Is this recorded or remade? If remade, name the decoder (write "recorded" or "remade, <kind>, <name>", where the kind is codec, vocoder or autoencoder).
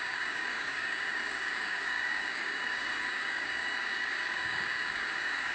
remade, codec, DAC